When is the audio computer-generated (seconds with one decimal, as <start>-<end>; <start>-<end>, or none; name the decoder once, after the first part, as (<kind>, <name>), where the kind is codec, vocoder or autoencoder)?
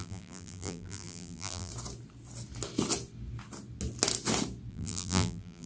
0.0-1.7 (vocoder, BigVGAN v2); 4.7-5.7